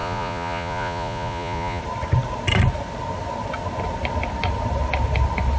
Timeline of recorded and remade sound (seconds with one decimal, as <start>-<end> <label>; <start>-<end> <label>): 0.0-1.8 remade; 1.8-5.6 recorded